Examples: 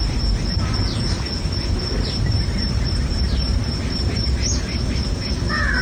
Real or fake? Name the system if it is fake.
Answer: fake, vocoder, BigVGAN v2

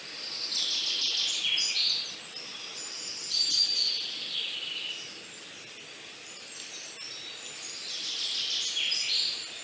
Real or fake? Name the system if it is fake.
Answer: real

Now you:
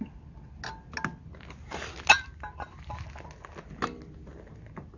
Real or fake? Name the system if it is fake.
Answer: real